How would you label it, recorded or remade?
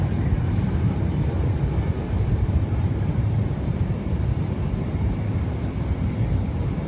remade